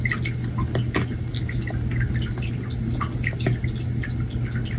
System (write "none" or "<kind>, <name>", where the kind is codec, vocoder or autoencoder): none